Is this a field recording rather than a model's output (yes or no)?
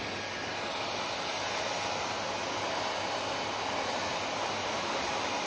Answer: yes